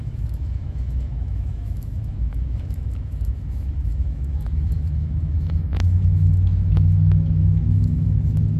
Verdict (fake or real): fake